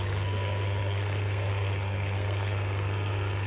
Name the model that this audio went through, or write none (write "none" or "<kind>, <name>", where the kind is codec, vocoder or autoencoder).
codec, SNAC